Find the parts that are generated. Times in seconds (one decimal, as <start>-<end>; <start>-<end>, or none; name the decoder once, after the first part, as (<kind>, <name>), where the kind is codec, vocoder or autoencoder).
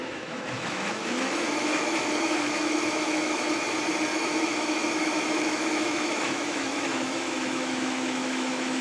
0.0-3.4 (autoencoder, DAC-VAE); 4.1-8.8